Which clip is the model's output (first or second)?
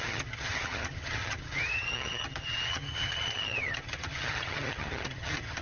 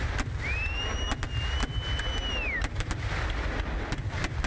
first